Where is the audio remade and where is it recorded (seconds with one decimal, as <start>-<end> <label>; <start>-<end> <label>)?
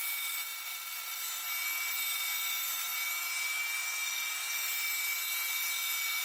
0.0-6.2 recorded